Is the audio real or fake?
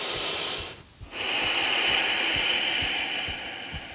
real